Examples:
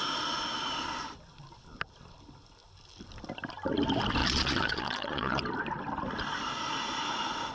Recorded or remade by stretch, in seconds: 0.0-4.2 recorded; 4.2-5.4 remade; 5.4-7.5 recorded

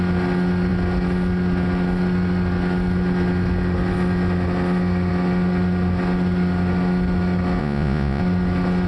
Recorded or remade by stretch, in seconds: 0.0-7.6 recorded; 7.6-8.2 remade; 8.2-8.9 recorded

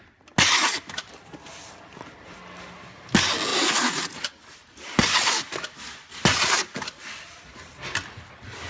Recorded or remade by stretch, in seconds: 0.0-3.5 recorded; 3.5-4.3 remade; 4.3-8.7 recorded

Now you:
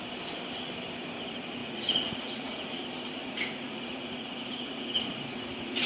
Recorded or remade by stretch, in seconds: 0.0-1.6 recorded; 1.6-2.8 remade; 2.8-3.2 recorded; 3.2-5.9 remade